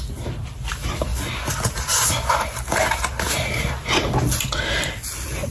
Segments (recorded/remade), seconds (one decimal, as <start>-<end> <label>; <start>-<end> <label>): 0.0-5.5 recorded